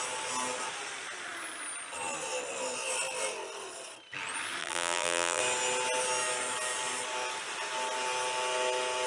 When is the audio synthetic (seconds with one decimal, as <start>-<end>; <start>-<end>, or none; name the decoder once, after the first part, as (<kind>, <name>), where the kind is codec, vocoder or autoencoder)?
4.6-5.4 (vocoder, BigVGAN v2)